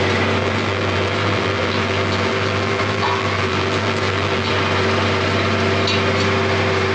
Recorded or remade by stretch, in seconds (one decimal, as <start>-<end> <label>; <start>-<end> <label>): 0.0-0.4 recorded; 0.4-4.5 remade; 4.5-6.9 recorded

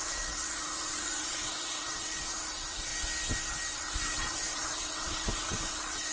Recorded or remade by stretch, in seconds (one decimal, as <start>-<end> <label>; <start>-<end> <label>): 0.0-2.9 remade; 2.9-3.7 recorded; 3.7-6.1 remade